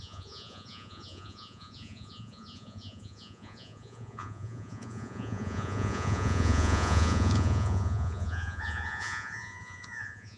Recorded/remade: remade